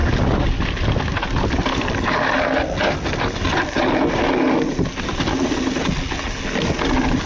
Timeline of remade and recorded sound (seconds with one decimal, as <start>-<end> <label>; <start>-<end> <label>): 0.0-7.3 recorded